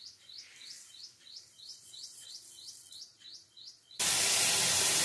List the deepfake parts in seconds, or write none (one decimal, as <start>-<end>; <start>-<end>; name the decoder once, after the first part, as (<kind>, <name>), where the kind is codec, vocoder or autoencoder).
1.7-2.3 (vocoder, Vocos); 3.1-4.0